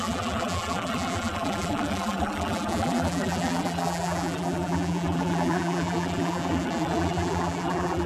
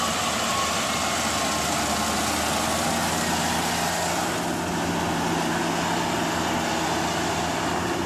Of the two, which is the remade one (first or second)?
first